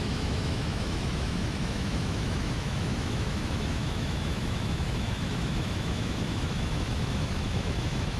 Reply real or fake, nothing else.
fake